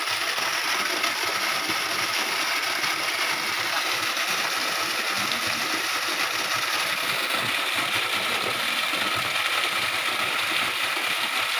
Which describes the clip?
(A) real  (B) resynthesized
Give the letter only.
A